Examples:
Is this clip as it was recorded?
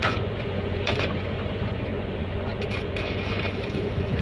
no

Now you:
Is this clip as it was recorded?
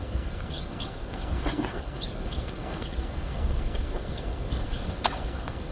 no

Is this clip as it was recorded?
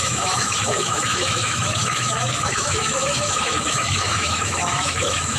no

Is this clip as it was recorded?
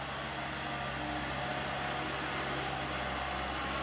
yes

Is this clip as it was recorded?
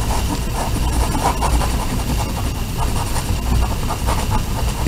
yes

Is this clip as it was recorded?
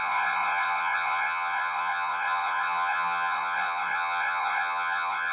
no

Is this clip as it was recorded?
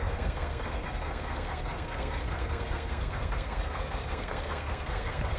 no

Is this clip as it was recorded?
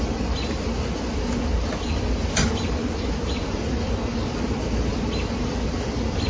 yes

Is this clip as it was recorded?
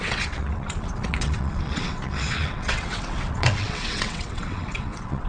no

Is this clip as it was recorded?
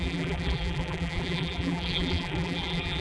no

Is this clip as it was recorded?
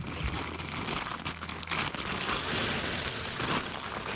yes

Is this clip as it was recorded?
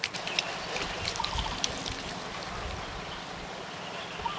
yes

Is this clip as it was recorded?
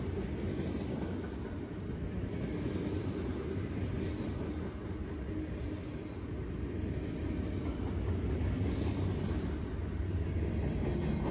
yes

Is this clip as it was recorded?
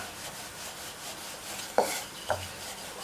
yes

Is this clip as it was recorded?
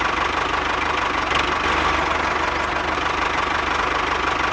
yes